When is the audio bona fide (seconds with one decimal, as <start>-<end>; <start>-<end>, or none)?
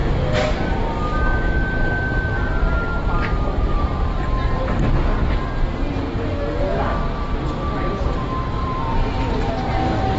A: 0.8-8.6; 9.5-10.2